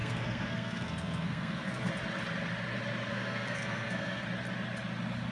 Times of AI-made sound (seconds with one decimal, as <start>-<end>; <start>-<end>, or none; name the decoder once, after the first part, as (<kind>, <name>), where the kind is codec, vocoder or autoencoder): 0.0-1.9 (codec, SNAC); 3.1-4.2